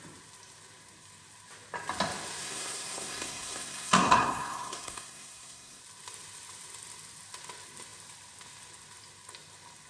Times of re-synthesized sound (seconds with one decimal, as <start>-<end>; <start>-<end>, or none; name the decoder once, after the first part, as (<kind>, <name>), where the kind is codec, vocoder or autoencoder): 2.4-5.8 (codec, SNAC)